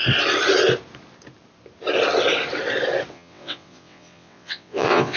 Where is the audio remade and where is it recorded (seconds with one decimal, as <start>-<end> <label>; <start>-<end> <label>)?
0.0-3.1 recorded; 3.1-5.2 remade